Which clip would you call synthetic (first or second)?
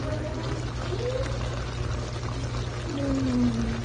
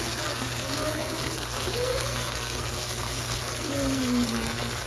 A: second